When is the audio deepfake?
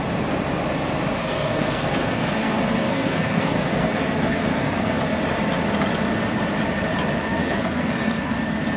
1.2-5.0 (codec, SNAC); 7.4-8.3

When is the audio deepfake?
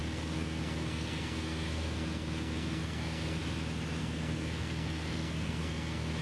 0.0-3.4 (codec, SNAC); 4.0-6.2